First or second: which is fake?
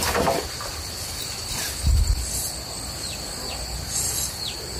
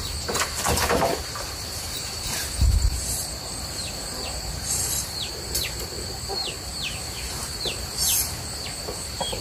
second